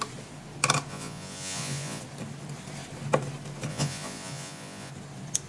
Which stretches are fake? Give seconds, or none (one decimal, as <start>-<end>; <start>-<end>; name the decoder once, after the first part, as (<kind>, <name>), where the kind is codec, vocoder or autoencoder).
0.9-2.0 (vocoder, Vocos); 3.7-4.9